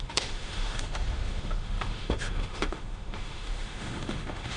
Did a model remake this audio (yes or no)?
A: yes